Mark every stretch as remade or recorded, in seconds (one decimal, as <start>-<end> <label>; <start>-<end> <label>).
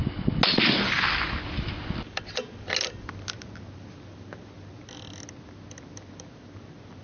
0.0-7.0 recorded